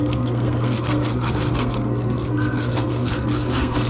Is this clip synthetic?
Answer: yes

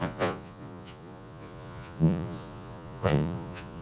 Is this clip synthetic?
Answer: yes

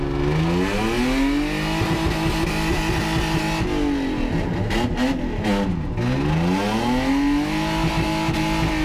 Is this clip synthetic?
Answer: no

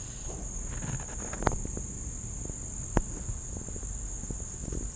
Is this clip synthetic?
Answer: no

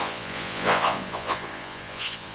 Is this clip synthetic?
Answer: yes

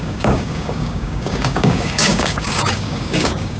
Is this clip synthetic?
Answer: yes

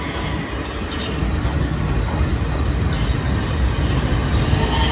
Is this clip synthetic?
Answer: no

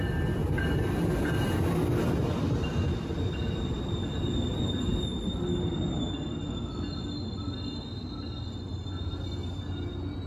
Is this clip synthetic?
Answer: no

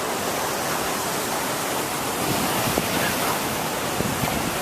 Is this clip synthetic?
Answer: no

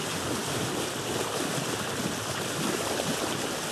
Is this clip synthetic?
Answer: no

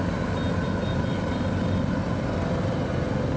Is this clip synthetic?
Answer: no